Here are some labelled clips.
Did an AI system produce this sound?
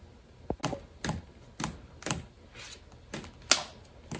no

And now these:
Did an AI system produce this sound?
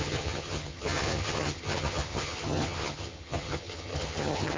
yes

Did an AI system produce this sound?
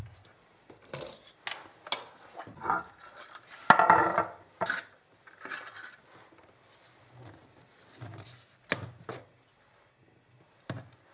no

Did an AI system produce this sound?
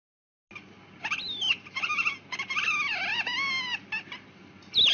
no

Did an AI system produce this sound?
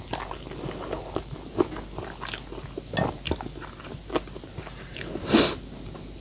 no